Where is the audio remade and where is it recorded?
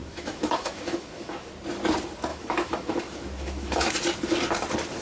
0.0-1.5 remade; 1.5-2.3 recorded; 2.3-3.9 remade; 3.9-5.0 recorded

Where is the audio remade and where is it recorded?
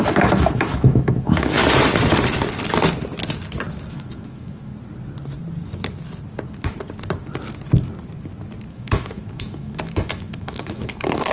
0.0-1.6 remade; 1.6-3.9 recorded; 3.9-4.7 remade; 4.7-8.7 recorded; 8.7-11.3 remade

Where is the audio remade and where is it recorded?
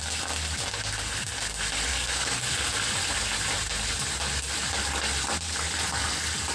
0.0-1.9 recorded; 1.9-2.5 remade; 2.5-6.5 recorded